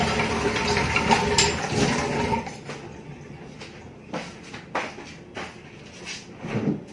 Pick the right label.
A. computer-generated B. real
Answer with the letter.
B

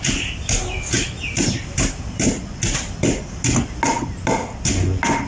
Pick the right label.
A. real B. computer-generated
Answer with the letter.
A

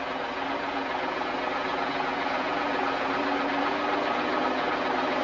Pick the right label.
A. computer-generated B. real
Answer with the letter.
B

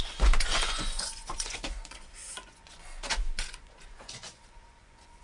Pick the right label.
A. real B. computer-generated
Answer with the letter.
B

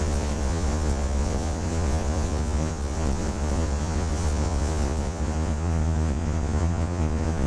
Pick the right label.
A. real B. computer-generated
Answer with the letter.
B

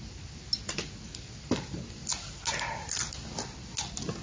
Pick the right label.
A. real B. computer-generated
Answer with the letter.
A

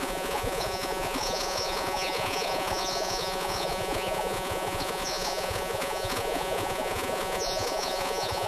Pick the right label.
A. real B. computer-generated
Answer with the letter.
B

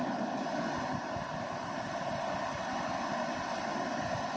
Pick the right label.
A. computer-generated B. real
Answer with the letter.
B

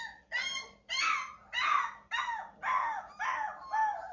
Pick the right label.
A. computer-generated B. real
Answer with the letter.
B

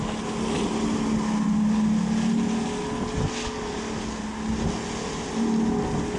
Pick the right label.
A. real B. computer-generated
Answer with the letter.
A